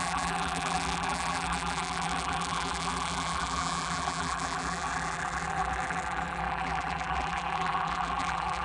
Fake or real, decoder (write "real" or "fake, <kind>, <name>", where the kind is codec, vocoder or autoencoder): fake, vocoder, BigVGAN v2